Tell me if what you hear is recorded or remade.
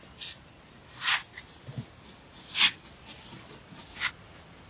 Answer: recorded